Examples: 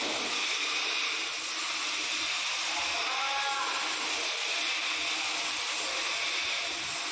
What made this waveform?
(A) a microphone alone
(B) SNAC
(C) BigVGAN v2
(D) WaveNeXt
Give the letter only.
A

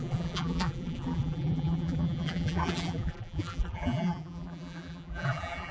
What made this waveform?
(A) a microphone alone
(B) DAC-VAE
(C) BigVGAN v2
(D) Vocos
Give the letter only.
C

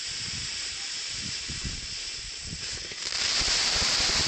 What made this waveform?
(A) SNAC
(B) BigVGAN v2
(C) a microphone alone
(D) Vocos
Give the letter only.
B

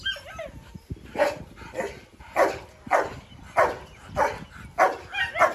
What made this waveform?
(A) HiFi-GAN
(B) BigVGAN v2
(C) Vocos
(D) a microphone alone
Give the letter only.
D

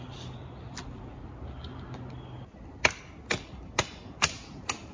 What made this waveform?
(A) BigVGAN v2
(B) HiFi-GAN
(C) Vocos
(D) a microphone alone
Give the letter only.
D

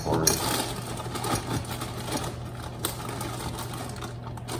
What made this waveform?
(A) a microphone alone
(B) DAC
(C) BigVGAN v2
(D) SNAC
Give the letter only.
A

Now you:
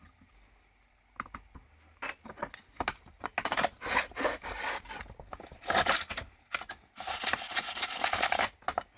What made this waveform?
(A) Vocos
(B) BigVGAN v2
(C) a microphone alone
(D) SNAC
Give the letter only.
C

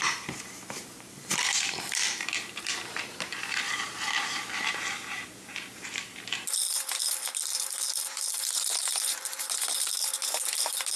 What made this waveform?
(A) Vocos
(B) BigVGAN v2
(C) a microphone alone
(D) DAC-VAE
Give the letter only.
B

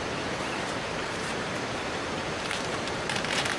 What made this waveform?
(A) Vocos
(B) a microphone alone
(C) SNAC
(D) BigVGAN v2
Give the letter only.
D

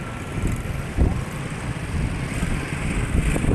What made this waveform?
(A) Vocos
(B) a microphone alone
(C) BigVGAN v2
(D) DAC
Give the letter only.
B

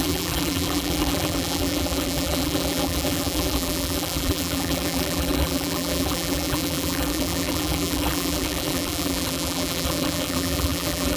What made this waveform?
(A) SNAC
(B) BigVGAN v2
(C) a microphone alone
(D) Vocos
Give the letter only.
B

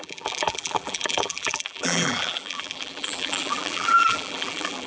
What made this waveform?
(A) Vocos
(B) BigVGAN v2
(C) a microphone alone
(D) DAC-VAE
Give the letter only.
B